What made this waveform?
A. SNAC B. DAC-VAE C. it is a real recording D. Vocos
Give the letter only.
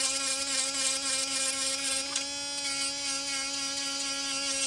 C